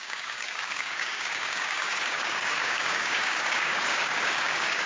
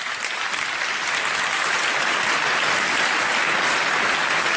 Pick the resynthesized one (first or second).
first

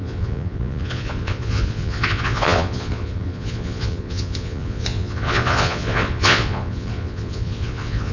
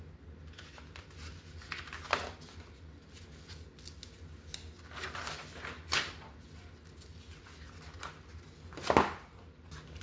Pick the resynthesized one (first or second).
first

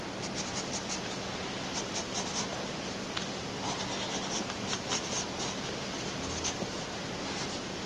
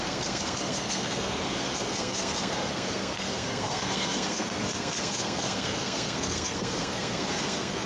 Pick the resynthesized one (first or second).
second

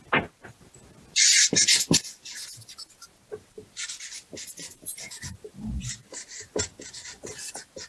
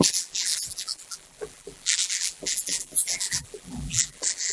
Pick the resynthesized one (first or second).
second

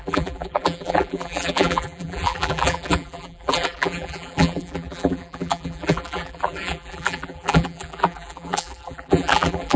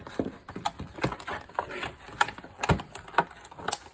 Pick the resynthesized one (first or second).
first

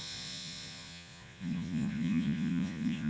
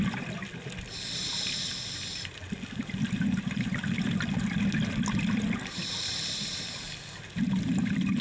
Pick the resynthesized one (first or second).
first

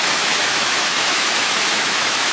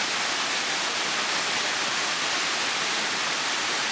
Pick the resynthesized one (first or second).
first